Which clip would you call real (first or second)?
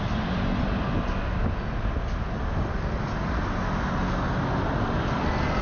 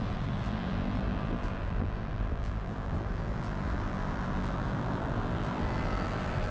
first